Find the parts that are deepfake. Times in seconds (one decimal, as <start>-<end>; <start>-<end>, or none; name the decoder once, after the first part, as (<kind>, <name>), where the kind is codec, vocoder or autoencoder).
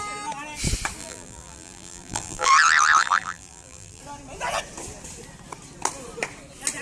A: 1.0-2.5 (vocoder, BigVGAN v2); 3.0-4.0